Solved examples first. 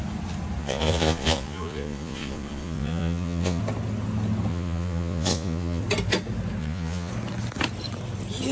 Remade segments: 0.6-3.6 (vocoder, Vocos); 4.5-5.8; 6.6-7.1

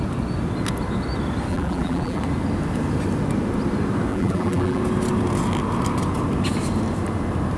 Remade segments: 1.5-2.2 (vocoder, BigVGAN v2); 4.1-4.8

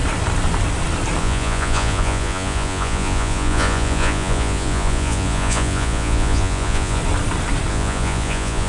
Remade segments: 1.2-7.0 (vocoder, Vocos); 7.7-8.7